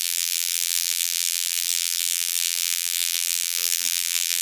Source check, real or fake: fake